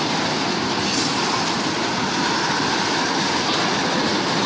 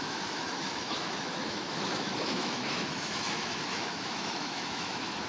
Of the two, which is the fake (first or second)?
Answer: second